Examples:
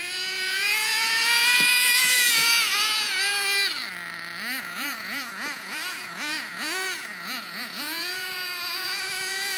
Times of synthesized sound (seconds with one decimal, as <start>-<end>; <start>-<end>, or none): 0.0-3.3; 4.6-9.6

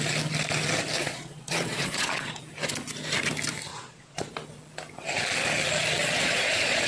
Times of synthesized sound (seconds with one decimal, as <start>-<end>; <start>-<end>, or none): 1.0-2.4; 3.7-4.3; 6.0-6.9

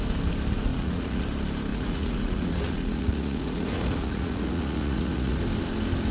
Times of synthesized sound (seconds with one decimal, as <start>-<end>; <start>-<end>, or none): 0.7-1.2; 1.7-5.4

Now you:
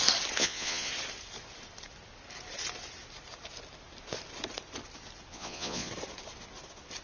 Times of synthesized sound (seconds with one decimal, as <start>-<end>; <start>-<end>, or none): 0.4-0.9; 5.3-5.9

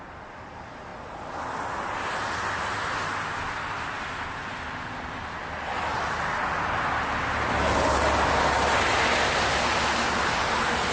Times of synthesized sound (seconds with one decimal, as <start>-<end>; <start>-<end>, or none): none